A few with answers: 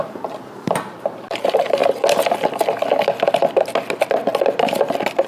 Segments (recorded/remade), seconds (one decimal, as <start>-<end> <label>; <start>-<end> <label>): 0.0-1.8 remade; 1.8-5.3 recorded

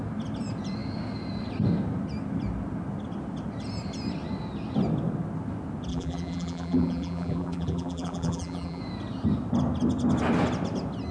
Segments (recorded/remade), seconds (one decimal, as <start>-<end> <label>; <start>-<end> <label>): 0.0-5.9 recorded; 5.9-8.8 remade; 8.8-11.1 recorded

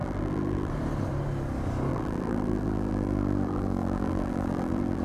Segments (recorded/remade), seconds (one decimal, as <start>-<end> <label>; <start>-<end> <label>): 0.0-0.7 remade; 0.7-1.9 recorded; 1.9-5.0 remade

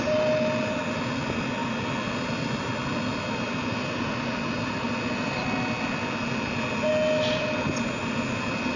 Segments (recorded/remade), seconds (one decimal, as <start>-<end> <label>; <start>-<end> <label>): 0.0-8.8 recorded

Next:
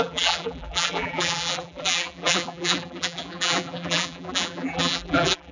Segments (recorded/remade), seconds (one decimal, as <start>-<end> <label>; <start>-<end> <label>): 0.0-5.5 remade

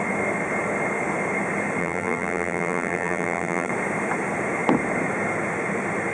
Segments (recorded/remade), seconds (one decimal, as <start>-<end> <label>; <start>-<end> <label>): 0.0-1.8 recorded; 1.8-3.7 remade; 3.7-6.1 recorded

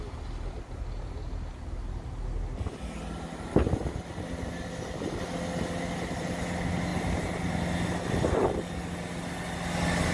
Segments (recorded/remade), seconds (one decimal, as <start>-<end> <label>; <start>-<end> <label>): 0.0-10.1 recorded

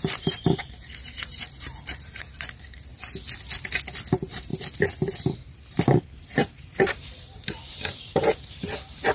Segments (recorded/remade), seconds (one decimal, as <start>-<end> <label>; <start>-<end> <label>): 0.0-2.9 remade; 2.9-4.1 recorded; 4.1-4.5 remade; 4.5-5.7 recorded; 5.7-9.1 remade